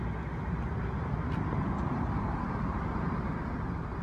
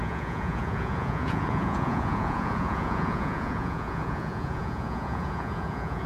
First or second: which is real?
first